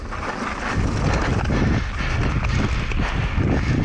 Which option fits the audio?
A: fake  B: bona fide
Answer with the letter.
B